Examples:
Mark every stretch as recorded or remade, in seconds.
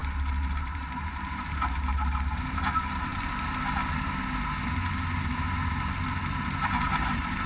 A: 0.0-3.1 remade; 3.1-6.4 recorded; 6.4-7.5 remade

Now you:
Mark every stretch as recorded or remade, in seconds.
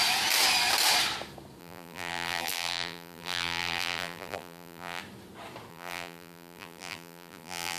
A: 0.0-1.6 recorded; 1.6-5.0 remade; 5.0-5.7 recorded; 5.7-7.8 remade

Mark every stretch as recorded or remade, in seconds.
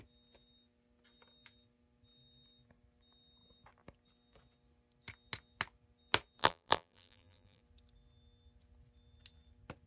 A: 0.0-6.4 recorded; 6.4-7.6 remade; 7.6-9.9 recorded